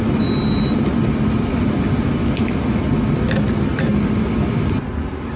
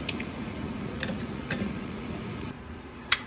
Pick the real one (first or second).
first